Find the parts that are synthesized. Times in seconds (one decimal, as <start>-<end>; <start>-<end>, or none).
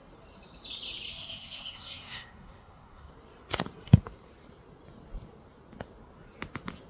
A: 1.1-3.1